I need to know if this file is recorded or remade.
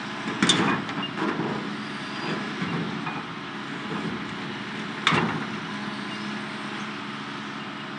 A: recorded